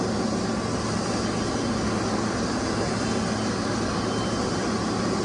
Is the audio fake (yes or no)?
no